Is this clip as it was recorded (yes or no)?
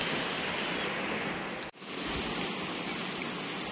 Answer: yes